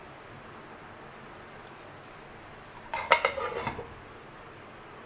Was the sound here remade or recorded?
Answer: recorded